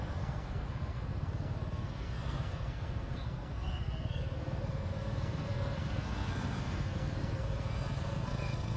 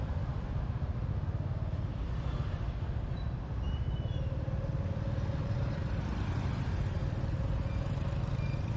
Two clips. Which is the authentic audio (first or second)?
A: second